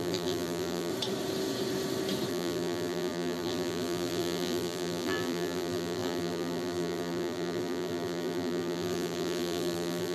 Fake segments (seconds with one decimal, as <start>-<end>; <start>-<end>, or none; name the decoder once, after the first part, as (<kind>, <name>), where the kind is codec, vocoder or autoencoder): 0.0-0.9 (vocoder, BigVGAN v2); 2.3-10.1